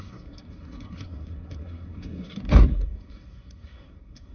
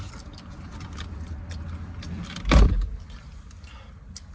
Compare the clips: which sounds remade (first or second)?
first